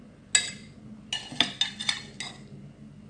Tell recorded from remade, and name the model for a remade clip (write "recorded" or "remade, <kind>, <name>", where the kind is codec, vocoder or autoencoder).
recorded